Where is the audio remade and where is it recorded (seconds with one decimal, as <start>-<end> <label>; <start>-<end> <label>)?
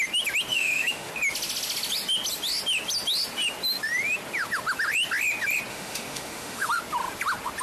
0.0-0.5 recorded; 0.5-1.1 remade; 1.1-5.7 recorded; 5.7-6.7 remade; 6.7-7.6 recorded